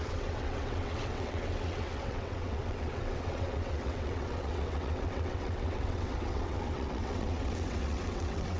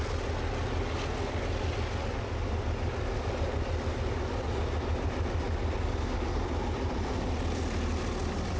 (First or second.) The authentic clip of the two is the second